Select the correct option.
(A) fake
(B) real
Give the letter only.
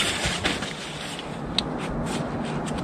B